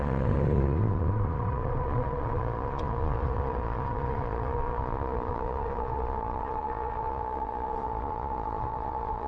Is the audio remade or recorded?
remade